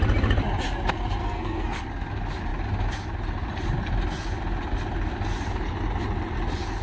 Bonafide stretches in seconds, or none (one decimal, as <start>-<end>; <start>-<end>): 0.0-1.2; 1.8-6.8